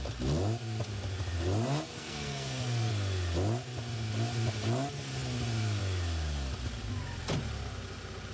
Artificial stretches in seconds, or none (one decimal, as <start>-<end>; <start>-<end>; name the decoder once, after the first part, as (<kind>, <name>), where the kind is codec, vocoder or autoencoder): 1.9-2.9 (codec, SNAC)